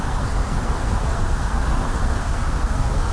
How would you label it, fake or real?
fake